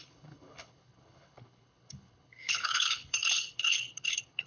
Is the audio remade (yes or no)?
yes